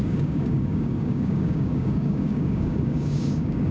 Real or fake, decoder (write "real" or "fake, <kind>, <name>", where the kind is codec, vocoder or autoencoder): fake, codec, DAC